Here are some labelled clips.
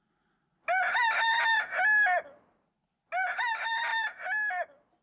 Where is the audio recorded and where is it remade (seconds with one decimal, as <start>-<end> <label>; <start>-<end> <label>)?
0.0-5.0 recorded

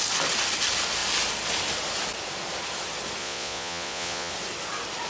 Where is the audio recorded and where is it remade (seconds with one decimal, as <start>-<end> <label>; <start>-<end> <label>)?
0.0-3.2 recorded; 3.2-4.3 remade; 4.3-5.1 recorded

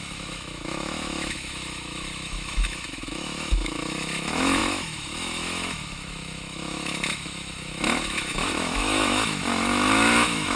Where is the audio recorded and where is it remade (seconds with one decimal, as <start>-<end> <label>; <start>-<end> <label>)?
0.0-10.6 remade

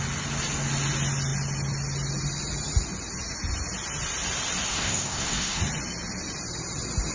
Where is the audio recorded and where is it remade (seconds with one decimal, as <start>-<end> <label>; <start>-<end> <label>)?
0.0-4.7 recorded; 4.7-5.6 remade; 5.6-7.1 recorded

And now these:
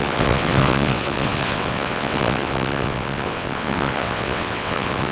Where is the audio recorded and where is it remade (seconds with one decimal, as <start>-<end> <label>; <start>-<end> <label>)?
0.0-5.1 remade

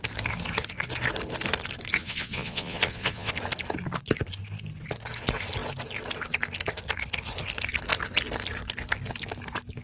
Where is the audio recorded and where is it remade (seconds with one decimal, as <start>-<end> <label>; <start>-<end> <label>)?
0.0-2.0 recorded; 2.0-3.3 remade; 3.3-9.8 recorded